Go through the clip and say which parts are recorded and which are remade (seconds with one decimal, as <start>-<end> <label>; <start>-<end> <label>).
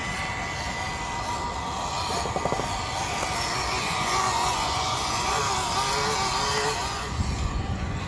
0.0-3.7 recorded; 3.7-5.4 remade; 5.4-6.8 recorded; 6.8-8.1 remade